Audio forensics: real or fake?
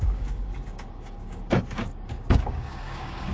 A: fake